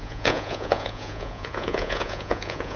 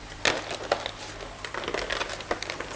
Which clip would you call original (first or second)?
second